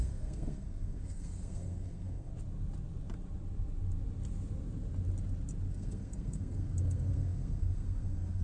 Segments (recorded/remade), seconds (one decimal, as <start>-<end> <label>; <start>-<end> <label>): 0.0-2.3 remade; 2.3-5.7 recorded; 5.7-8.4 remade